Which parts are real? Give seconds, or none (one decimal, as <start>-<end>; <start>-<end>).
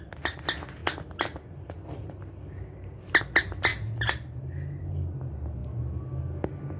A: 0.0-6.8